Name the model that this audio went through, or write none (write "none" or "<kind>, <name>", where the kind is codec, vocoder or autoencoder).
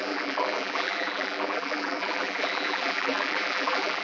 vocoder, BigVGAN v2